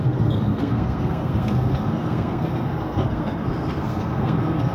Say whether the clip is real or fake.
fake